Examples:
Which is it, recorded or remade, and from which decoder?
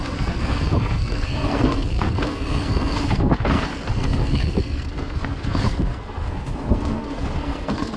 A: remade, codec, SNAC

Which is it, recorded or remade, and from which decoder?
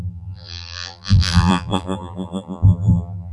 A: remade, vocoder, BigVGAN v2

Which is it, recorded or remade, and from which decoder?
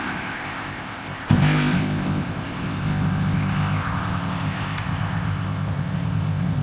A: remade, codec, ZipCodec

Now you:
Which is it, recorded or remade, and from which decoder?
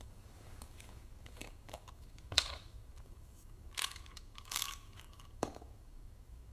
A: remade, codec, DAC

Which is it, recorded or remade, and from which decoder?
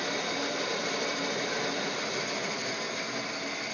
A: recorded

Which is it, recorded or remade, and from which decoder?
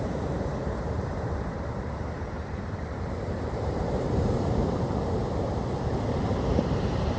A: remade, vocoder, BigVGAN v2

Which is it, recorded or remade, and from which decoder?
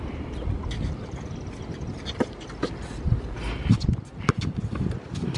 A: recorded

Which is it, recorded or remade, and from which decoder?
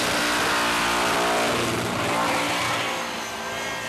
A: recorded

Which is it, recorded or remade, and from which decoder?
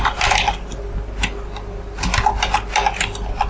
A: recorded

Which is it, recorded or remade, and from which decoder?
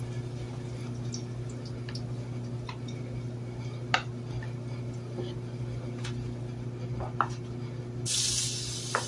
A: recorded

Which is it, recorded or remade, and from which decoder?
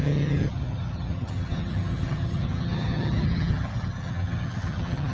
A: remade, vocoder, HiFi-GAN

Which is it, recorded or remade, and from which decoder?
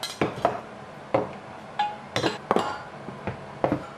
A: recorded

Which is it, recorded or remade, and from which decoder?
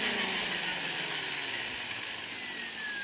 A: recorded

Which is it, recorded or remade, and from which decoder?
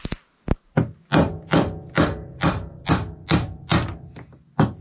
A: recorded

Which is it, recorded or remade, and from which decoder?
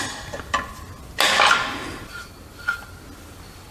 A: recorded